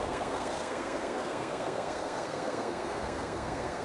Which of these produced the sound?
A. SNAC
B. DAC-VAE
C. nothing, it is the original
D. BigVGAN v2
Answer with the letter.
A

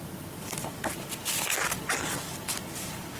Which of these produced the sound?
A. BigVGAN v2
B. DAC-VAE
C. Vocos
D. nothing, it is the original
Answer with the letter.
D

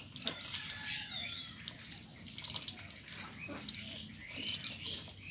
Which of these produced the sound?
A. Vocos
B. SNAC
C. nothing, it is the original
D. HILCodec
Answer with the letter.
C